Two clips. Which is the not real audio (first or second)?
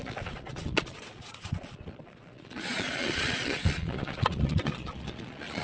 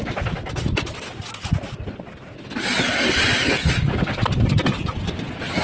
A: first